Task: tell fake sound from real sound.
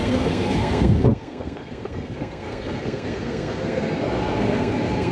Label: fake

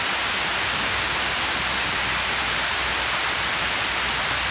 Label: real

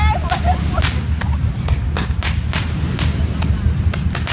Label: real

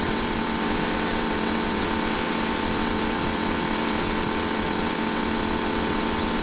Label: fake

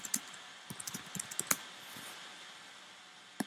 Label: real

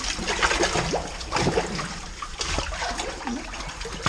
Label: real